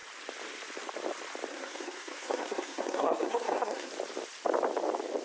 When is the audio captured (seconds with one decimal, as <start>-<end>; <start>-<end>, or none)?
0.0-1.5; 3.9-5.2